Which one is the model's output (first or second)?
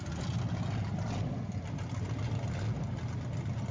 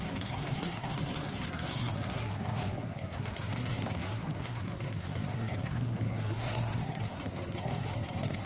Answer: second